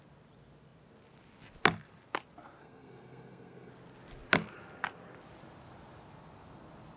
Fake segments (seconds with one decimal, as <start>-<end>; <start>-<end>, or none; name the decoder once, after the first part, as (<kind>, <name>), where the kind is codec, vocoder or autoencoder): 2.6-3.7 (codec, SNAC)